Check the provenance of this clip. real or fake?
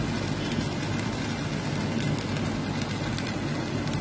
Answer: real